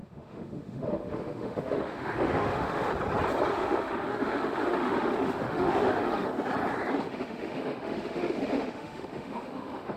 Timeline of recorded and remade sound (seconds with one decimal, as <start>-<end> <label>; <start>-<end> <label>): 0.0-2.9 remade; 2.9-3.5 recorded; 3.5-6.3 remade; 6.3-7.0 recorded; 7.0-10.0 remade